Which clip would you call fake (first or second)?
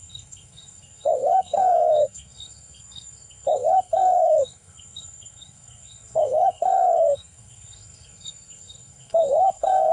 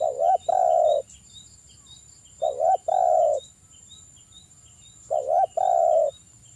first